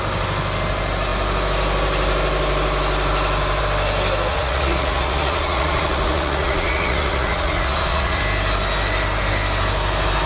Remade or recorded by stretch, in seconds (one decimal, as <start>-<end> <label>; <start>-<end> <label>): 0.0-4.3 recorded; 4.3-8.2 remade; 8.2-10.3 recorded